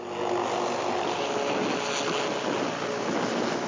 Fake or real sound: real